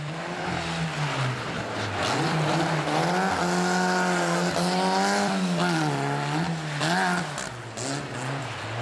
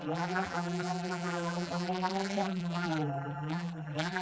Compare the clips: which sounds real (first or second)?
first